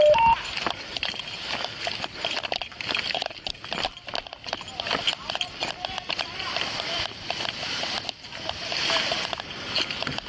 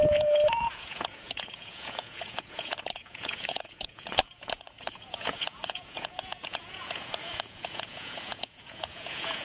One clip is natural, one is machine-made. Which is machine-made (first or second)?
second